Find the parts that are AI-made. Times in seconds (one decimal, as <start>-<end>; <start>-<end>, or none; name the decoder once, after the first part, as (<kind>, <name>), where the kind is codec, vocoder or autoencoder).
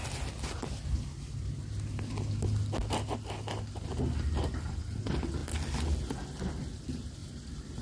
none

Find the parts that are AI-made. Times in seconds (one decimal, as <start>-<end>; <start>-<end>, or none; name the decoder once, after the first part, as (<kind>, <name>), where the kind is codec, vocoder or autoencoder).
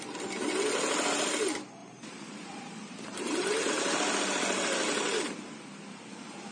1.8-3.7 (vocoder, BigVGAN v2)